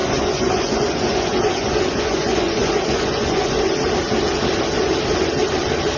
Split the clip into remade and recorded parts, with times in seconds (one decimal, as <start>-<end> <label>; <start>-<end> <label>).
0.0-3.6 remade; 3.6-6.0 recorded

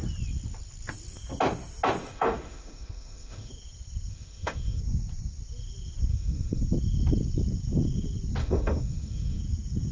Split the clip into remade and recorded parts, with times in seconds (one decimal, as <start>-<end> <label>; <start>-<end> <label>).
0.0-2.0 recorded; 2.0-3.5 remade; 3.5-4.1 recorded; 4.1-4.8 remade; 4.8-6.1 recorded; 6.1-6.6 remade; 6.6-8.4 recorded; 8.4-9.4 remade; 9.4-9.9 recorded